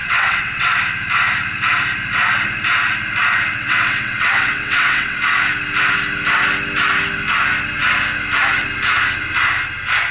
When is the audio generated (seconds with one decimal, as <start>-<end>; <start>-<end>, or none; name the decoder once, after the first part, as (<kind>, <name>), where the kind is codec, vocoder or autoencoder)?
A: 0.0-0.7 (vocoder, WaveNeXt); 3.5-5.2